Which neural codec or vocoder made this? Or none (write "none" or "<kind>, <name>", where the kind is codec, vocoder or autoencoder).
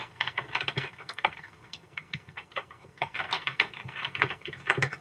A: codec, SNAC